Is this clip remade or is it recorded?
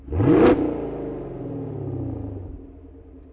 recorded